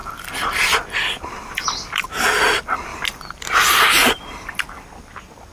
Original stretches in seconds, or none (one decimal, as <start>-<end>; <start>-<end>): 0.0-2.9; 3.6-5.5

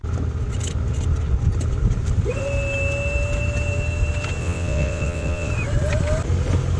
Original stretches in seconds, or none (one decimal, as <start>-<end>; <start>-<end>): 0.0-4.4; 5.5-6.8

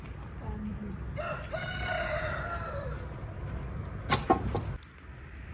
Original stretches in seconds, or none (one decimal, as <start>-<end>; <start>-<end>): 0.0-5.5

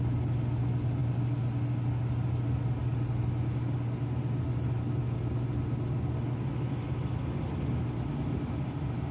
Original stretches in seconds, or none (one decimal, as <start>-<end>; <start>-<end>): 0.0-9.1

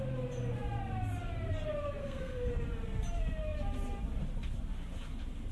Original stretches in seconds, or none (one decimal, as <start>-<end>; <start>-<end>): 0.0-2.0; 2.5-5.5